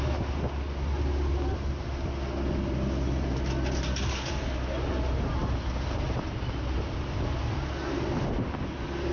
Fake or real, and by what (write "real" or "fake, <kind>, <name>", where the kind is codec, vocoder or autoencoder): real